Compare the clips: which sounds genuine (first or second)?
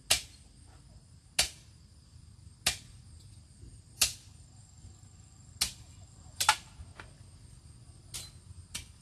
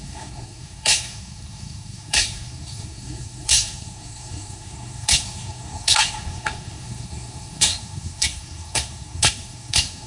first